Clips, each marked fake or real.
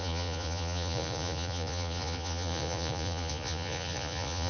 fake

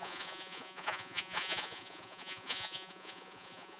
fake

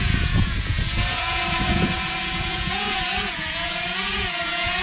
fake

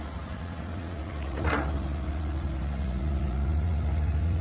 fake